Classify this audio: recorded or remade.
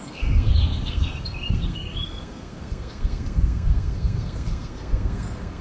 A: remade